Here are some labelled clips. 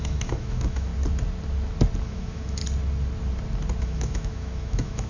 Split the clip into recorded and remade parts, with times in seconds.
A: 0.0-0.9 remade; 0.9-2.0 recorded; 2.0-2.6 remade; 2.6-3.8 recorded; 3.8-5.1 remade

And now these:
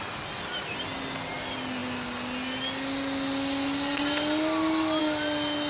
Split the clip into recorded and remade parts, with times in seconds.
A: 0.0-5.7 recorded

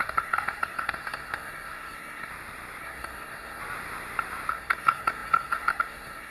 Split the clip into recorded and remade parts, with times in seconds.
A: 0.0-2.3 remade; 2.3-2.8 recorded; 2.8-3.6 remade; 3.6-4.5 recorded; 4.5-6.3 remade

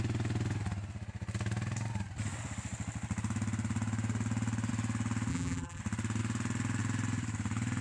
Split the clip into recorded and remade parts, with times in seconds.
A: 0.0-5.3 recorded; 5.3-5.8 remade; 5.8-7.8 recorded

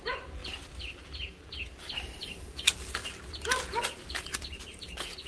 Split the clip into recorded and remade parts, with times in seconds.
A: 0.0-5.3 recorded

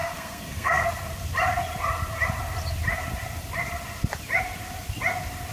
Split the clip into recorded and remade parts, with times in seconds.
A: 0.0-1.0 remade; 1.0-5.5 recorded

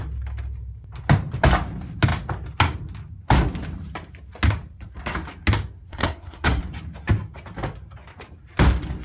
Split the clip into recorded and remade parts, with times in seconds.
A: 0.0-5.9 recorded; 5.9-6.6 remade; 6.6-9.0 recorded